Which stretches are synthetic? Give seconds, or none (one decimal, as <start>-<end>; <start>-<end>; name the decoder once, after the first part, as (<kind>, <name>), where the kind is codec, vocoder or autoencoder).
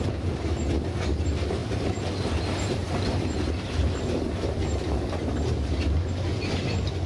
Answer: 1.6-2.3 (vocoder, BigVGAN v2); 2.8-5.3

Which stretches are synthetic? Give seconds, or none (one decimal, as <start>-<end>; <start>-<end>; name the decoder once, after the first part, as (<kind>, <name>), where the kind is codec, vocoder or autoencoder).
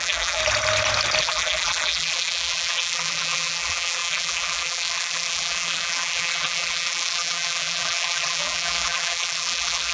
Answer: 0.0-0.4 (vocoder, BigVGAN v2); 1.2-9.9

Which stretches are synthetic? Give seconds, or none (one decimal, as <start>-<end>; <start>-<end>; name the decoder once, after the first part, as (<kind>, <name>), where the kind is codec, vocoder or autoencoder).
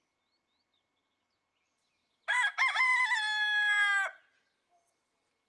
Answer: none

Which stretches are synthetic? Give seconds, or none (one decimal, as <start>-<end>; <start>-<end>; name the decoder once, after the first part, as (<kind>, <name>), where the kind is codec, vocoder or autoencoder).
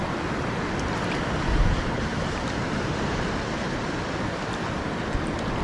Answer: 2.1-3.3 (vocoder, BigVGAN v2)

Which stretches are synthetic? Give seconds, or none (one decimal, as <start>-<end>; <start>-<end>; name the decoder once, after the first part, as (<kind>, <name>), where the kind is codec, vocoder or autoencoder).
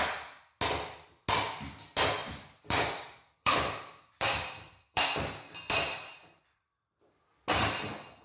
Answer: 2.2-7.1 (vocoder, BigVGAN v2)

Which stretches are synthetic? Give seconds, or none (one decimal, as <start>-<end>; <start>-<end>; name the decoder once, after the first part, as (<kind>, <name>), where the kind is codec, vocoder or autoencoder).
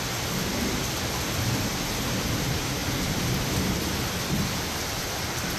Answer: none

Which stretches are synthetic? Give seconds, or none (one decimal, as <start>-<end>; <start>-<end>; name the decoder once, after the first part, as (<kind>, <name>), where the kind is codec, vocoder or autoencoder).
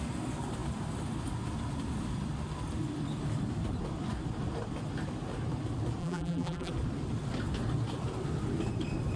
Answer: 6.0-6.7 (vocoder, BigVGAN v2)